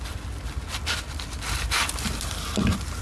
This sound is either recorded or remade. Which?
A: recorded